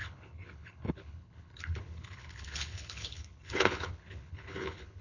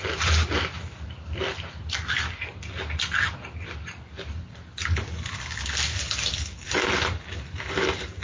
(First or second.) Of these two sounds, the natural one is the second